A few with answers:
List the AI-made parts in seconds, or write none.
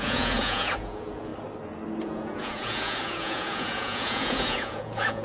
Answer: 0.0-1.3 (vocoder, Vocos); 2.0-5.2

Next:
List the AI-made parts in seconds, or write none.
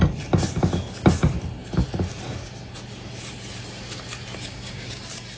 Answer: 4.5-5.0 (codec, DAC)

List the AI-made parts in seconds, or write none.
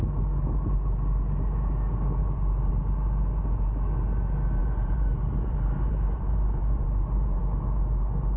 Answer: 2.2-2.7 (vocoder, BigVGAN v2); 4.6-7.4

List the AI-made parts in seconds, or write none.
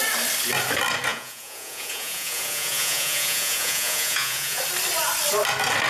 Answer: 1.1-4.6 (vocoder, Vocos)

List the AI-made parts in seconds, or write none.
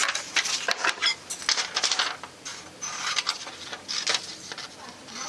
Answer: 2.5-3.4 (vocoder, BigVGAN v2)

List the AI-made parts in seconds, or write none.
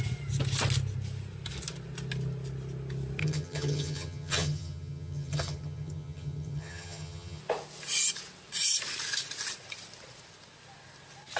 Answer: 3.2-7.4 (vocoder, HiFi-GAN)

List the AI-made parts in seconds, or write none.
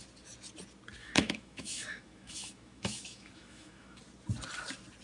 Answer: 1.0-4.0 (autoencoder, DAC-VAE)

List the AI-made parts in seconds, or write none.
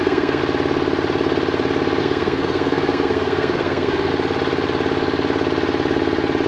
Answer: 0.0-0.4 (codec, SNAC); 2.0-4.1